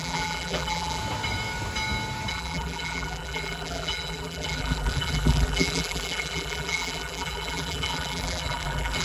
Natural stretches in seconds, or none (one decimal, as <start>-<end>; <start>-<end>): 1.0-2.3